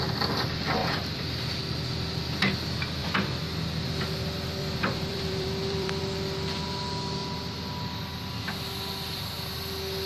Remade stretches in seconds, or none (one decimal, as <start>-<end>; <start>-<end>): 0.8-1.6; 3.0-3.6; 4.6-6.0